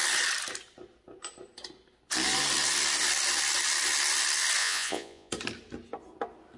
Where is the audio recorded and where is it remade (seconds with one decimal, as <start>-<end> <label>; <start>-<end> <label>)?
0.0-4.6 recorded; 4.6-5.3 remade; 5.3-6.6 recorded